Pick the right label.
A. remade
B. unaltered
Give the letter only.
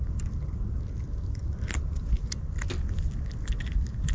A